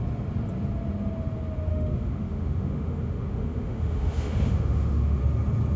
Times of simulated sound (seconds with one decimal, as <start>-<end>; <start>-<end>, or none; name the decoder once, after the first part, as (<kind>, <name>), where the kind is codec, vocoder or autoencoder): 1.7-5.2 (autoencoder, DAC-VAE)